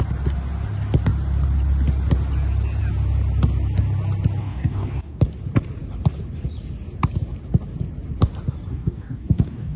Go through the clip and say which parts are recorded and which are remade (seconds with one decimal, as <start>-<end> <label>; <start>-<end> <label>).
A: 0.0-4.4 recorded; 4.4-5.2 remade; 5.2-8.7 recorded; 8.7-9.8 remade